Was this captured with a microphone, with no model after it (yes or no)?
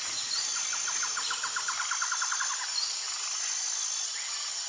yes